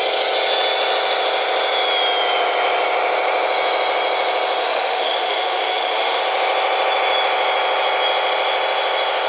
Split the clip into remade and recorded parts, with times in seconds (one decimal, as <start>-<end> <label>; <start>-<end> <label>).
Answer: 0.0-4.6 recorded; 4.6-6.2 remade; 6.2-9.3 recorded